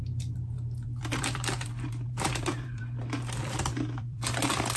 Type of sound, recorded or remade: remade